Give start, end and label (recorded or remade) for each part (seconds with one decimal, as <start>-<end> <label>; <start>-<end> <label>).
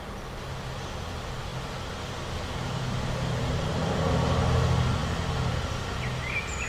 0.0-6.7 recorded